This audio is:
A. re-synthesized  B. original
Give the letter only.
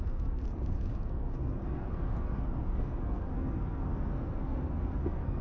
A